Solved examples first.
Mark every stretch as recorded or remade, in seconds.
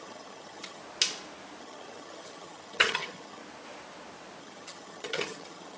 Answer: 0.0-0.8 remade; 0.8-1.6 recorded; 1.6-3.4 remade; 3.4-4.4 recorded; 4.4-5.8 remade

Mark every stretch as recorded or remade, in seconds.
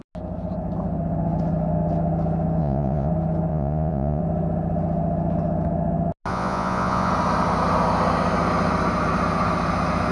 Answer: 0.0-2.6 recorded; 2.6-3.1 remade; 3.1-3.5 recorded; 3.5-4.2 remade; 4.2-6.3 recorded; 6.3-7.1 remade; 7.1-10.1 recorded